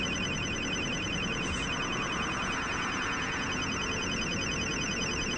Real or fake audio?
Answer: fake